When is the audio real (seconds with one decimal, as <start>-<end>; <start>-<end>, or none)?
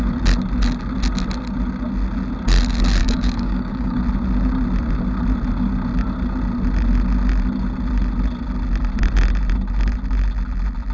0.0-3.0; 4.0-10.9